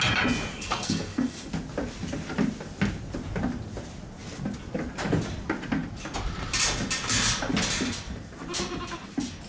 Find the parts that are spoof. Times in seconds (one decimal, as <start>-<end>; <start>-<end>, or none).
0.5-1.5